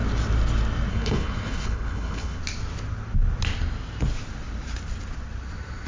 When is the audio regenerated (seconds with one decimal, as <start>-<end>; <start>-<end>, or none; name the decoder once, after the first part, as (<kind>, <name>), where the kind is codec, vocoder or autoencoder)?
0.9-2.4 (codec, HILCodec)